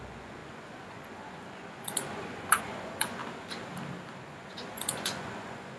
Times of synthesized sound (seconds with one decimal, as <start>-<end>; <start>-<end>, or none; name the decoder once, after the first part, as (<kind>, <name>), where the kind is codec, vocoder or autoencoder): 0.0-3.2 (vocoder, Vocos); 4.2-5.8